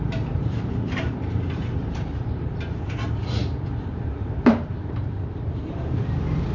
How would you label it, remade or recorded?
remade